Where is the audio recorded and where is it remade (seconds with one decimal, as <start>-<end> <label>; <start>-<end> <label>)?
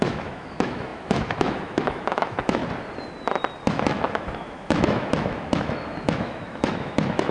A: 0.0-2.6 remade; 2.6-3.7 recorded; 3.7-7.3 remade